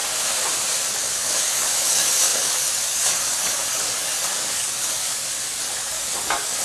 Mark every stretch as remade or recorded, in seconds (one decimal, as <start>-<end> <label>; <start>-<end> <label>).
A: 0.0-0.9 recorded; 0.9-6.6 remade